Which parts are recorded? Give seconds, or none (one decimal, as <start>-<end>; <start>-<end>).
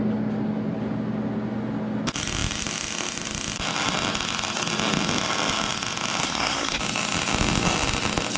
0.0-6.2; 6.8-8.4